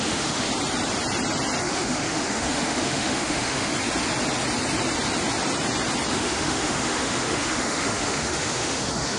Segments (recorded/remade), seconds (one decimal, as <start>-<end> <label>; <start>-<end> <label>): 0.0-0.5 remade; 0.5-1.6 recorded; 1.6-3.7 remade; 3.7-6.1 recorded; 6.1-9.2 remade